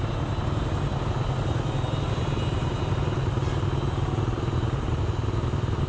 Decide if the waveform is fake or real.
real